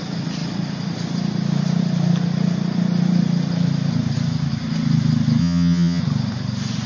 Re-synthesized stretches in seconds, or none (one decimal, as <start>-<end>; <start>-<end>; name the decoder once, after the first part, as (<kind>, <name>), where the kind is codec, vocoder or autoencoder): 5.4-6.0 (vocoder, HiFi-GAN)